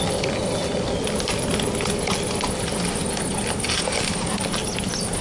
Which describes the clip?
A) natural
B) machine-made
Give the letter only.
A